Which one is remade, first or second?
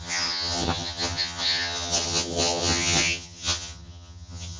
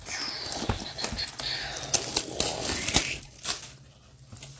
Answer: first